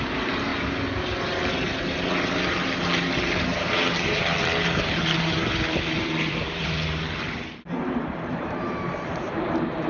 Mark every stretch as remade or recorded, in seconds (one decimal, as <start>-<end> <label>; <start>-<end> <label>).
0.0-0.5 remade; 0.5-1.5 recorded; 1.5-9.9 remade